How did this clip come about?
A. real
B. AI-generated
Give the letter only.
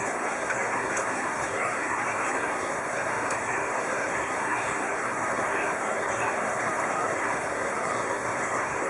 B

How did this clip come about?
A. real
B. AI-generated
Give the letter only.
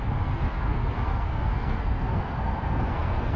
B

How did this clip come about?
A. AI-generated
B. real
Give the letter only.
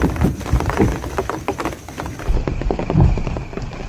B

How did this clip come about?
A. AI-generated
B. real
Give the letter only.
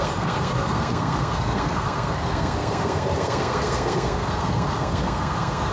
A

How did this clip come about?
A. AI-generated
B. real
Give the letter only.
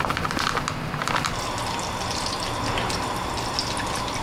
B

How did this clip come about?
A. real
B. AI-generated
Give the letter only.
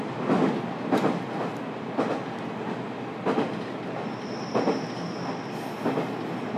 A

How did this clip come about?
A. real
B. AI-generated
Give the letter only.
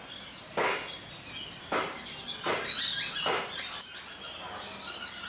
A